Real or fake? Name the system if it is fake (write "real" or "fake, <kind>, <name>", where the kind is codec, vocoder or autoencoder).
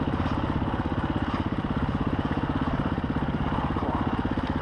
real